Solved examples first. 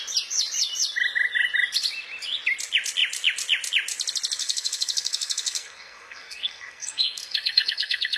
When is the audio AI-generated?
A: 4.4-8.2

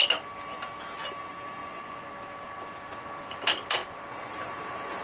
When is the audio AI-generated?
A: 1.6-2.1

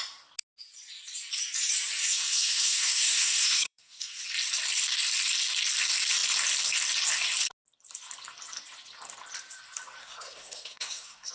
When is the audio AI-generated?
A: 2.0-4.2; 10.0-11.3

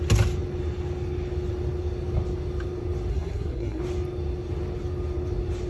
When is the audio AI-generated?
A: 3.1-3.8

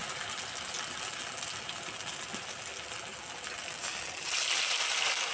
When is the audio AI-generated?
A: none

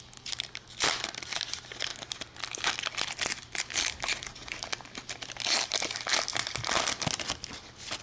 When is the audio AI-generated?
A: none

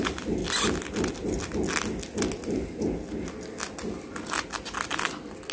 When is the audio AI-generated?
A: none

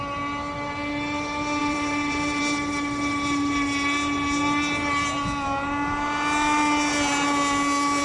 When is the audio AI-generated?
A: 1.6-2.4